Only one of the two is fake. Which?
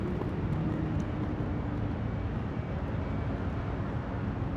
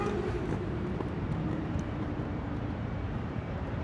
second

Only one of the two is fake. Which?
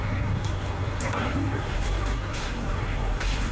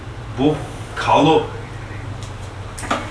first